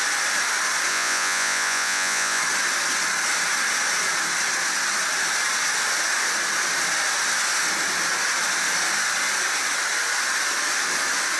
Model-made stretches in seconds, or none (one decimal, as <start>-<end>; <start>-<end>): 0.9-2.4